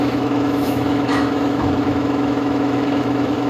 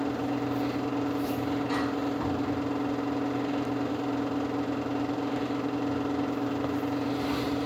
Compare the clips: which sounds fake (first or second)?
first